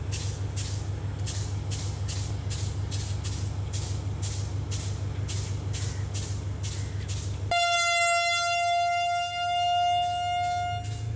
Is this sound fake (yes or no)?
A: no